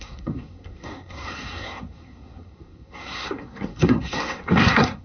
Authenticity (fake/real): fake